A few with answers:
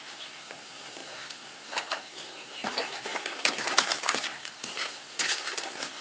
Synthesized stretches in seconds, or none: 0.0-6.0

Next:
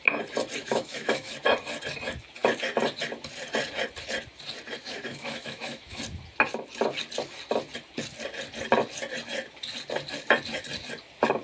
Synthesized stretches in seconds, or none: 0.6-1.3; 4.8-6.0

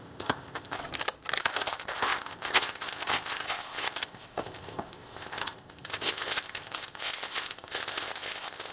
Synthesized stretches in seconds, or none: 0.0-0.8; 1.4-8.7